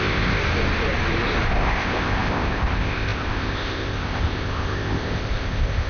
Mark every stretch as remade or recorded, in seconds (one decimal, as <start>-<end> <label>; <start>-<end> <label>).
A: 0.0-0.4 remade; 0.4-1.5 recorded; 1.5-5.9 remade